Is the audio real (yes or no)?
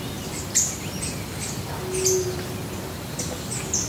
yes